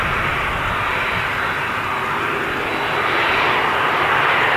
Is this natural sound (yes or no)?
yes